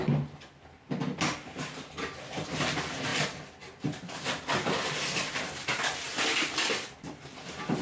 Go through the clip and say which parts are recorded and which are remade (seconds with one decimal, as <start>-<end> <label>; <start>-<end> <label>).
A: 0.0-7.8 recorded